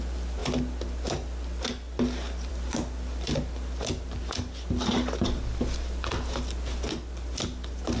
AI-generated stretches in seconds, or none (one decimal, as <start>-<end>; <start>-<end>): none